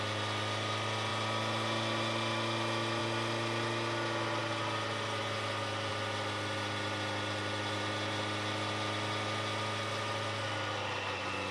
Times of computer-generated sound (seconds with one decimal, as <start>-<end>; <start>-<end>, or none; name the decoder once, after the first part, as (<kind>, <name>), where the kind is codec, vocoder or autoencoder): none